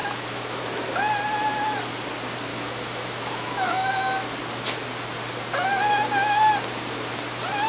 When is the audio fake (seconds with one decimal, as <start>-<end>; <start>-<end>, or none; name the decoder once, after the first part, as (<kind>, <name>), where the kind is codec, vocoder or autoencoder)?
0.0-0.6 (autoencoder, DAC-VAE); 2.5-3.9